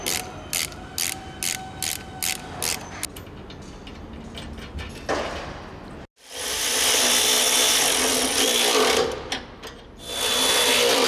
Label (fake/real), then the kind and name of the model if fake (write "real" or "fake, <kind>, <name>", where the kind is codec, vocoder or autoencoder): real